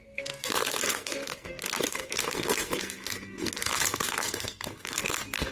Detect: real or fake fake